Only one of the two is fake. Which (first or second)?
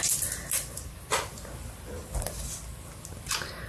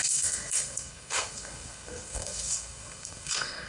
second